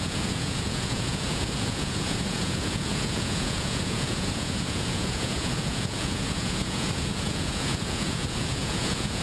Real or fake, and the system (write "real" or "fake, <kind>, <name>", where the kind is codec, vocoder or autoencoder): fake, vocoder, Vocos